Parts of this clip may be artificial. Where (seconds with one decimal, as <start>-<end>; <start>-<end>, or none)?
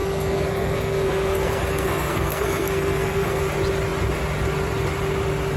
0.0-3.4